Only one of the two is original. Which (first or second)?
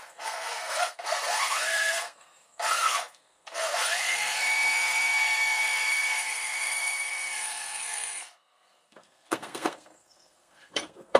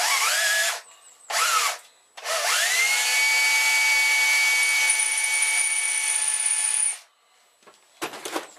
second